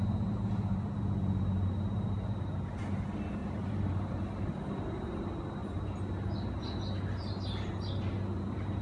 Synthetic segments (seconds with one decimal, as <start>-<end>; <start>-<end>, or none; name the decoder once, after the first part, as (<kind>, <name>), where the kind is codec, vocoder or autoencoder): 3.4-4.7 (vocoder, BigVGAN v2)